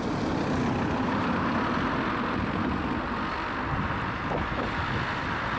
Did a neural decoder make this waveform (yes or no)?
no